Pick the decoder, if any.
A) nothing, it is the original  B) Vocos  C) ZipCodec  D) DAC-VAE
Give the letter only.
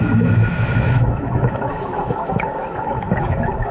D